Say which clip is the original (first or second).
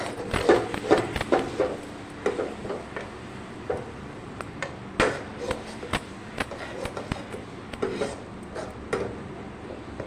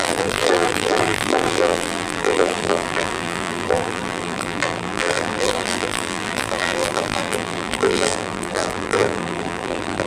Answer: first